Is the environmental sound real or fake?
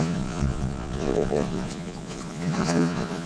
fake